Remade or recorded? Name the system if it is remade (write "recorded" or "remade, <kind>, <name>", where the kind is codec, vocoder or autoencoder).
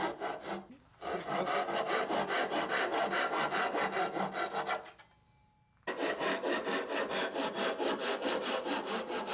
recorded